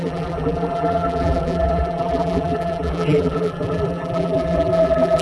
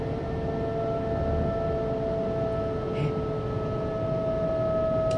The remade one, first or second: first